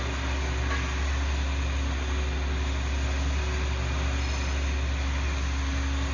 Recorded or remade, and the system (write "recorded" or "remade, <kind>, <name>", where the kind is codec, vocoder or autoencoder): recorded